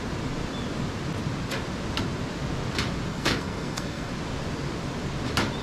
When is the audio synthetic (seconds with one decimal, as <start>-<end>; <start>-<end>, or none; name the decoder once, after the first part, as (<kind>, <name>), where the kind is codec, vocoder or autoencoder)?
3.1-4.1 (codec, SNAC)